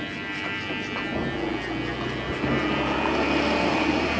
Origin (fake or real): real